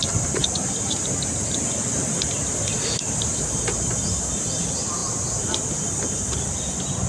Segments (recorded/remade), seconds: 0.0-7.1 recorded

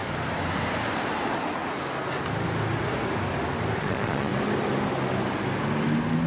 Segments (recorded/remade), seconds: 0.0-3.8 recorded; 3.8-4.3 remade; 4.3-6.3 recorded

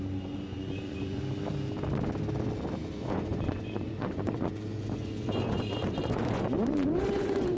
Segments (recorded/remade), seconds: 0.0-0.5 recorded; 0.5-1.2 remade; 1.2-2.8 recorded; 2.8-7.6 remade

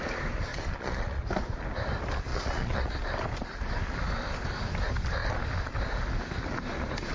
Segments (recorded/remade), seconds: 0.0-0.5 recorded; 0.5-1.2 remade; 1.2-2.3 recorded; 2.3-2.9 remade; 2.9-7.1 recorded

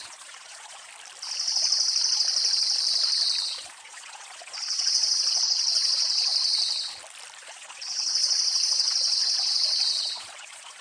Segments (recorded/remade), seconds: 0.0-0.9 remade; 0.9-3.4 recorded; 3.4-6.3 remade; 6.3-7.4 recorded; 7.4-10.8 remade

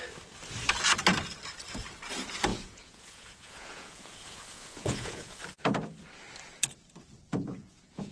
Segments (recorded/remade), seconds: 0.0-2.5 recorded; 2.5-5.4 remade; 5.4-7.3 recorded; 7.3-8.1 remade

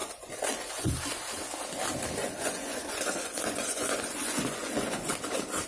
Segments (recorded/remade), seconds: 0.0-0.9 remade; 0.9-2.2 recorded; 2.2-5.1 remade; 5.1-5.7 recorded

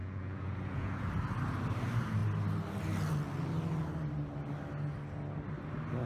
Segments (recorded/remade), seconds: 0.0-1.1 remade; 1.1-6.1 recorded